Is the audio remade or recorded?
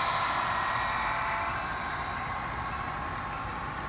recorded